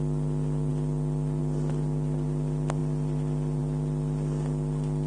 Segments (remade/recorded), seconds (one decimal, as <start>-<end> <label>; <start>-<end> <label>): 0.0-2.8 recorded; 2.8-3.6 remade; 3.6-5.1 recorded